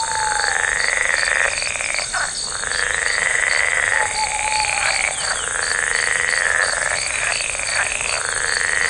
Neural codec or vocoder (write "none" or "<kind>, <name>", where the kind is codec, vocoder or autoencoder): none